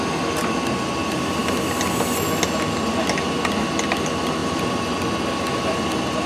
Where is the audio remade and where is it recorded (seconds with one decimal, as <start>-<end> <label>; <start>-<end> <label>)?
0.0-4.4 recorded; 4.4-5.0 remade; 5.0-6.3 recorded